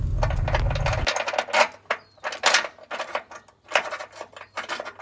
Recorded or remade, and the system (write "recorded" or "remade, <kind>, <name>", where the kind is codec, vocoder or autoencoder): recorded